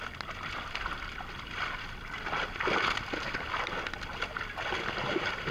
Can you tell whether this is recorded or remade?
recorded